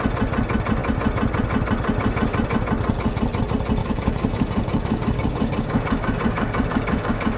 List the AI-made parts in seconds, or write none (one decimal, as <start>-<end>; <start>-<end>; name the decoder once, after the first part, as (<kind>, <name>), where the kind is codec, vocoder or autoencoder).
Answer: 3.8-7.4 (codec, DAC)